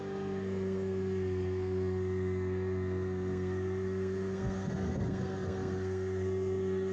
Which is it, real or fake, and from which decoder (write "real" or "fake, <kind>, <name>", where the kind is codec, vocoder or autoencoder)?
fake, codec, SNAC